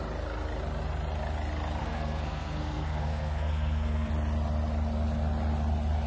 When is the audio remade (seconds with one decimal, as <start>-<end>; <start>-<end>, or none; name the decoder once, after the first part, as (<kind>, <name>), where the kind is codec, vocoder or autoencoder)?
1.8-4.1 (codec, SNAC)